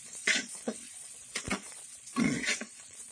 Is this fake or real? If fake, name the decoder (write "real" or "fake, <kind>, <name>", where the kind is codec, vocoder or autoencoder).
fake, vocoder, Vocos